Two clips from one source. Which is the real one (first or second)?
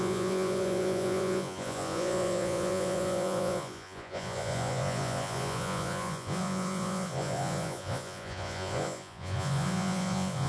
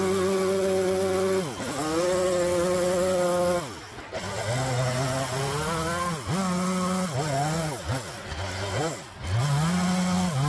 second